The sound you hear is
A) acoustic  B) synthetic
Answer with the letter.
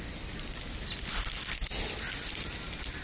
A